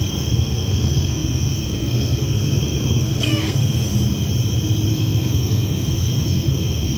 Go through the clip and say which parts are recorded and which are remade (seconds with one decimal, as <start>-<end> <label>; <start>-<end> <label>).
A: 0.0-3.9 remade; 3.9-4.9 recorded; 4.9-7.0 remade